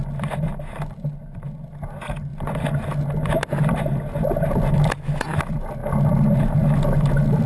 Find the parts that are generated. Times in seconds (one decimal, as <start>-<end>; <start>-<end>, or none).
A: none